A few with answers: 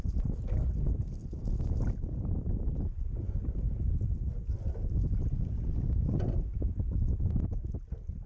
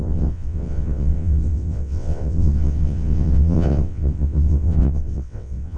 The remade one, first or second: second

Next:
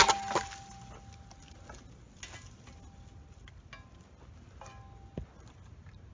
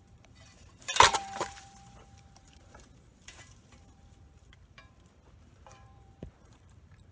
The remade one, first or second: second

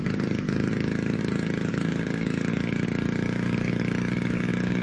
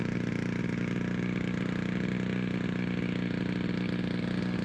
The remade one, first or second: first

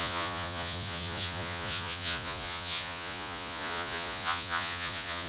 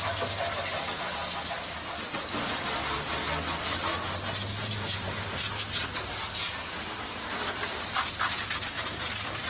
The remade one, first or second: first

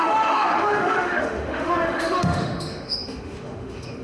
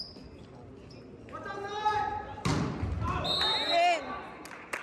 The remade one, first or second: first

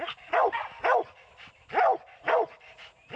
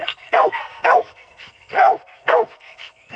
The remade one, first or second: second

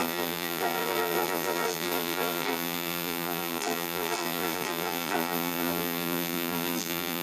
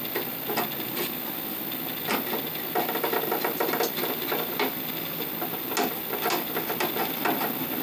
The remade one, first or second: first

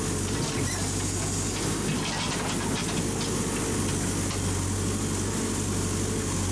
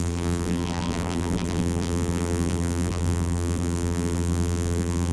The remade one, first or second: second